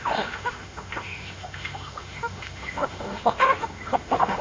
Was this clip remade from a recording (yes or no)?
yes